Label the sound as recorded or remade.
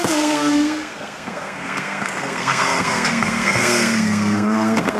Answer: remade